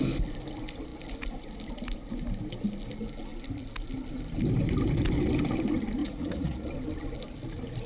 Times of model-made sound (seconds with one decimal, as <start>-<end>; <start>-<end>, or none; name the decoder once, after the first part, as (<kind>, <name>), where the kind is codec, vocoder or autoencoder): 6.0-6.7 (vocoder, Vocos)